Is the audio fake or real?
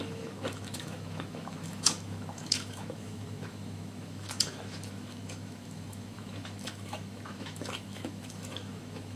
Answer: fake